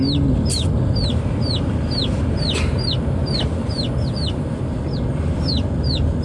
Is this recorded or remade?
recorded